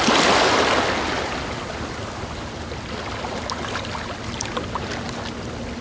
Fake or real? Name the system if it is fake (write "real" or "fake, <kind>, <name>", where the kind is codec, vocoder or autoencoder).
real